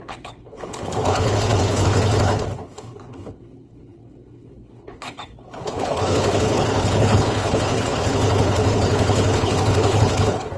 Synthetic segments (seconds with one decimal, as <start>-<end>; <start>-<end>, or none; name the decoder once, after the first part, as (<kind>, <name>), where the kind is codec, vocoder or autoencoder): 0.0-10.6 (codec, HILCodec)